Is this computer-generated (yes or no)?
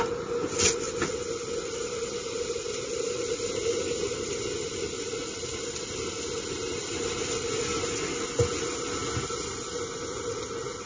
no